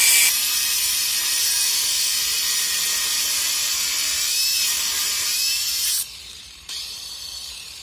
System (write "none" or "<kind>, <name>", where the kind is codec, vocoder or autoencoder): vocoder, BigVGAN v2